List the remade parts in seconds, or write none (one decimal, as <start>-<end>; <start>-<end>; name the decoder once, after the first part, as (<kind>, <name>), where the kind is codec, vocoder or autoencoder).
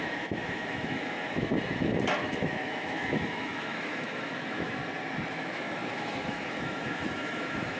0.0-4.8 (autoencoder, DAC-VAE); 5.3-7.8